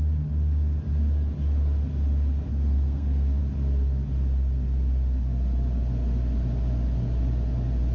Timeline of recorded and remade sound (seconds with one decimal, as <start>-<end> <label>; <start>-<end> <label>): 0.0-2.5 recorded; 2.5-3.4 remade; 3.4-7.9 recorded

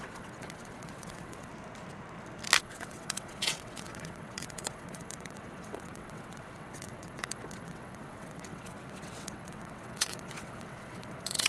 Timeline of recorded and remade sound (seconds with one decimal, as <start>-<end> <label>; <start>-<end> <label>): 0.0-1.5 remade; 1.5-2.6 recorded; 2.6-11.5 remade

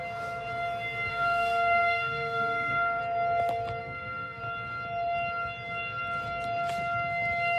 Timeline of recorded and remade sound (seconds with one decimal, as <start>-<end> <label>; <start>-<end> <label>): 0.0-1.1 recorded; 1.1-3.0 remade; 3.0-3.8 recorded; 3.8-4.4 remade; 4.4-7.6 recorded